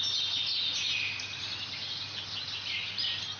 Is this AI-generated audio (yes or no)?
no